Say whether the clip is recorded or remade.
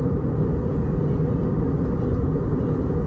recorded